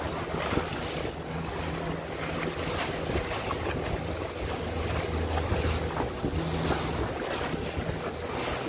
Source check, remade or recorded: recorded